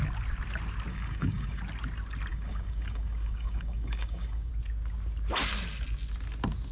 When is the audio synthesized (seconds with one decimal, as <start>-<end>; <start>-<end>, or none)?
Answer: 0.9-1.6; 2.3-4.5